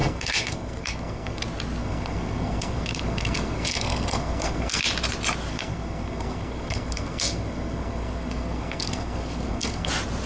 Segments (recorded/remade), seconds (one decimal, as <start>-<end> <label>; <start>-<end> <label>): 0.0-1.4 remade; 1.4-1.8 recorded; 1.8-4.8 remade; 4.8-5.5 recorded; 5.5-9.9 remade; 9.9-10.3 recorded